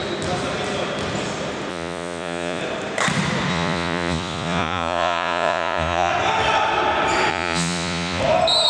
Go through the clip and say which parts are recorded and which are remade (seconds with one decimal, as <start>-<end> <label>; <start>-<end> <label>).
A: 0.0-1.7 recorded; 1.7-2.6 remade; 2.6-3.5 recorded; 3.5-6.1 remade; 6.1-7.3 recorded; 7.3-8.2 remade; 8.2-8.7 recorded